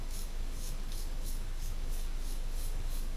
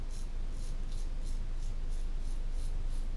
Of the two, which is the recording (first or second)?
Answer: second